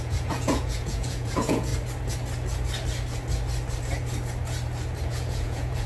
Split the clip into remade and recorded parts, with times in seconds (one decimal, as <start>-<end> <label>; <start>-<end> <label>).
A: 0.0-1.7 remade; 1.7-5.1 recorded; 5.1-5.9 remade